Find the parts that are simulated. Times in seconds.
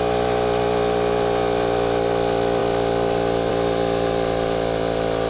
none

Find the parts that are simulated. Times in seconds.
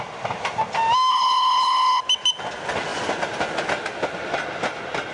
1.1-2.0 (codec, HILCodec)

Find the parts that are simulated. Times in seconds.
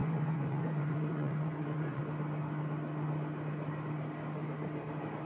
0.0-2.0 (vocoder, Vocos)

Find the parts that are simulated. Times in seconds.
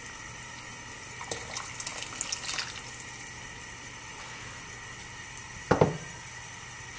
none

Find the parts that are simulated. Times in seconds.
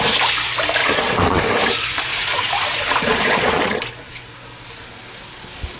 0.8-1.4 (vocoder, Vocos); 2.1-3.8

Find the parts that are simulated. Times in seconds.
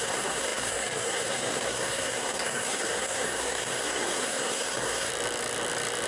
0.0-5.1 (codec, SNAC)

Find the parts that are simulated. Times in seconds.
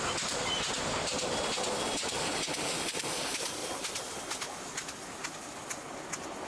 none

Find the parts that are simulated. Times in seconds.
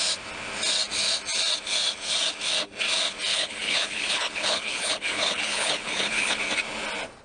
3.3-6.4 (codec, HILCodec)